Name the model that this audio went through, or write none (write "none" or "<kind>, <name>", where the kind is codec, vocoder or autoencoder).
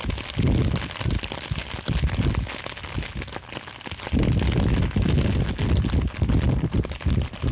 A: none